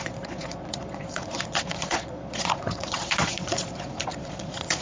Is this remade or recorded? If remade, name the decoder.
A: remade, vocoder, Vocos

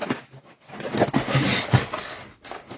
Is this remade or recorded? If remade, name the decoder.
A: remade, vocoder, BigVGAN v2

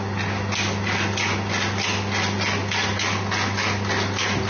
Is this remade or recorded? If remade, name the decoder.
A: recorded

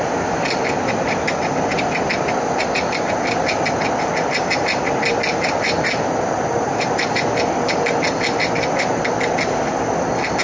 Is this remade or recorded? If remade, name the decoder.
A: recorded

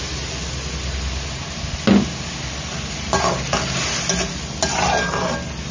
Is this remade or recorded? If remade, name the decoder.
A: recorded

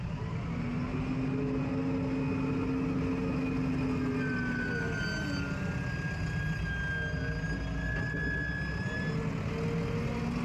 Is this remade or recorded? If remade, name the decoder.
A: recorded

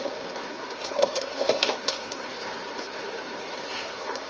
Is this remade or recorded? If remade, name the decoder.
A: remade, codec, SNAC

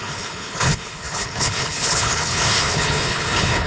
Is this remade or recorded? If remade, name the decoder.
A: remade, codec, HILCodec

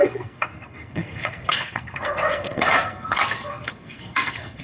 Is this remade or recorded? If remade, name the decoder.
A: remade, codec, SNAC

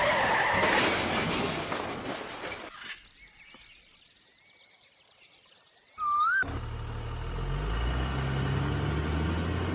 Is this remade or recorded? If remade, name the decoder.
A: recorded